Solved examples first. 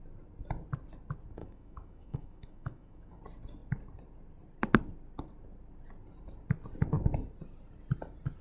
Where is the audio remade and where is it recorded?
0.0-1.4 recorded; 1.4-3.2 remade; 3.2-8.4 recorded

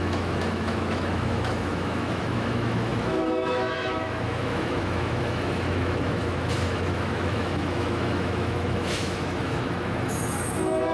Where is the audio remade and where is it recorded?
0.0-10.9 remade

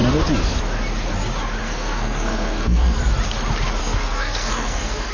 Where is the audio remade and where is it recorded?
0.0-1.6 recorded; 1.6-3.0 remade; 3.0-3.8 recorded; 3.8-5.1 remade

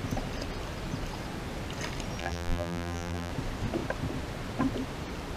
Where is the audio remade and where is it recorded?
0.0-2.2 recorded; 2.2-3.3 remade; 3.3-5.4 recorded

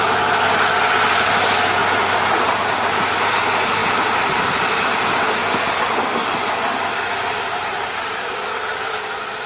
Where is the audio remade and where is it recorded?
0.0-3.8 recorded; 3.8-4.8 remade; 4.8-9.5 recorded